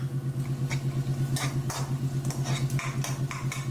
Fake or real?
real